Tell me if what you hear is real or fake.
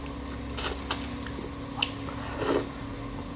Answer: real